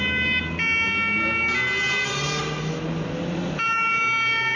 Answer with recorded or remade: recorded